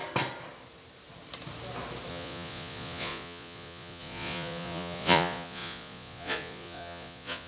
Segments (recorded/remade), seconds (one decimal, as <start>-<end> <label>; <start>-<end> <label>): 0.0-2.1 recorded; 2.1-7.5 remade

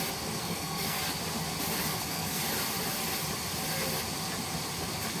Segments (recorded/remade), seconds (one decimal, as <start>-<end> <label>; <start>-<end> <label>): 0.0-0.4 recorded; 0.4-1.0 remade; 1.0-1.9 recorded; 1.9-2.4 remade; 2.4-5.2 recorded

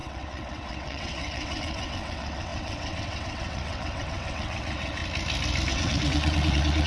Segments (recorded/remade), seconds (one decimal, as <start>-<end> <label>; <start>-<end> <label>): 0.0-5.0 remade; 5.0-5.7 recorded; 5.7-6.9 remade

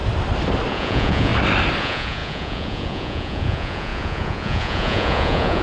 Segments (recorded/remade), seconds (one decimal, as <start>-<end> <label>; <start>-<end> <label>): 0.0-0.7 recorded; 0.7-1.3 remade; 1.3-1.8 recorded; 1.8-5.6 remade